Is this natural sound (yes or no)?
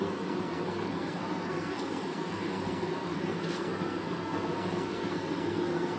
no